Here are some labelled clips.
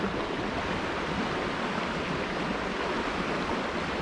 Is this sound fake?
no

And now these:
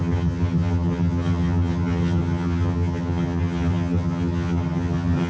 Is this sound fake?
yes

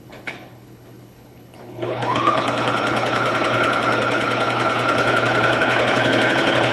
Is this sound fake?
yes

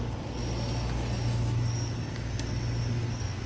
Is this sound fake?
no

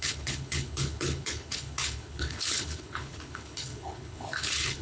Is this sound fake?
yes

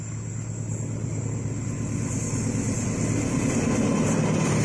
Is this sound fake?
no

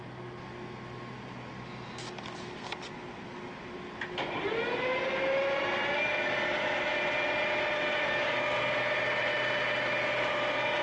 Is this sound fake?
no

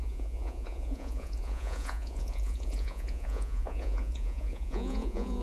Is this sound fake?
yes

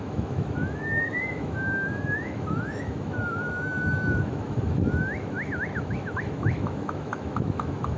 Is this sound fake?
yes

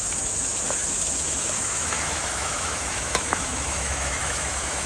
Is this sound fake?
yes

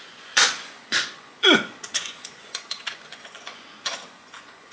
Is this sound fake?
yes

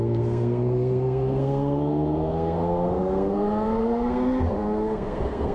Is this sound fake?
yes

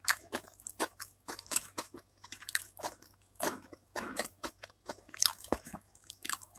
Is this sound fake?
yes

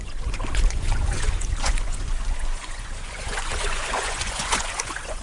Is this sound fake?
yes